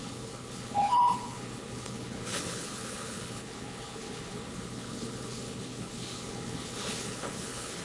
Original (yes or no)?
no